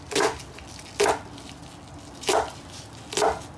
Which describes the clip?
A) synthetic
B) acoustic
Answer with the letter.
B